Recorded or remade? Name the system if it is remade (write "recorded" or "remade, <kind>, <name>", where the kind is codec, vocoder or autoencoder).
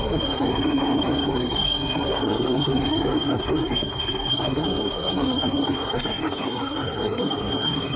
remade, codec, SNAC